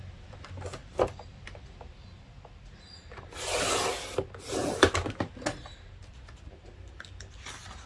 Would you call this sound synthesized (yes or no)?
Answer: no